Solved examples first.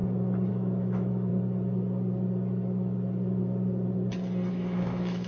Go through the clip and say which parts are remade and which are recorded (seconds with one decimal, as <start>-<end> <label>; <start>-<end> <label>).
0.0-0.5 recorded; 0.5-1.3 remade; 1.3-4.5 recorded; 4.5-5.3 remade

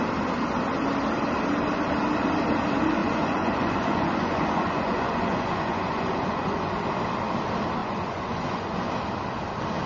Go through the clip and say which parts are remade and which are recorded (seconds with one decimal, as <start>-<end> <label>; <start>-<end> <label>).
0.0-3.0 recorded; 3.0-6.7 remade; 6.7-7.8 recorded; 7.8-8.9 remade; 8.9-9.9 recorded

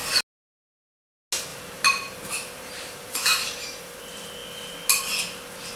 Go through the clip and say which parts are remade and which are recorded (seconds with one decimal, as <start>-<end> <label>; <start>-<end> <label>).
0.0-1.5 recorded; 1.5-4.0 remade; 4.0-5.8 recorded

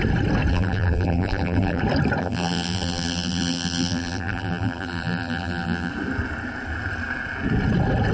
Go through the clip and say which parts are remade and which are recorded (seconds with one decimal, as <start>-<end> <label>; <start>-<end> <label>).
0.0-0.5 recorded; 0.5-1.8 remade; 1.8-2.2 recorded; 2.2-5.9 remade; 5.9-8.1 recorded

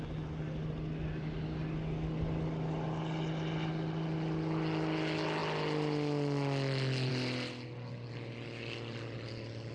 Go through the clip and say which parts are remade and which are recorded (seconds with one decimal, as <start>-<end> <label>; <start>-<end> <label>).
0.0-9.7 recorded

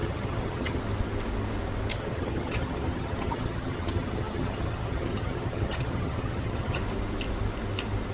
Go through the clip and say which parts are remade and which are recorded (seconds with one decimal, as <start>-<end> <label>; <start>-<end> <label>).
0.0-0.8 remade; 0.8-1.9 recorded; 1.9-6.8 remade; 6.8-8.1 recorded

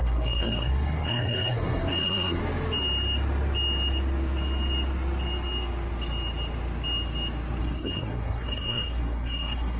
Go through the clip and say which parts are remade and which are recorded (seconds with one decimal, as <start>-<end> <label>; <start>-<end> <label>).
0.0-2.4 remade; 2.4-7.6 recorded; 7.6-9.8 remade

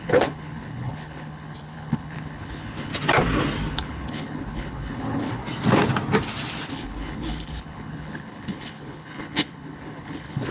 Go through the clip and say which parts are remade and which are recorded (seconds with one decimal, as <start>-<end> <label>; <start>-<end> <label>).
0.0-2.9 remade; 2.9-3.7 recorded; 3.7-5.4 remade; 5.4-6.7 recorded; 6.7-10.5 remade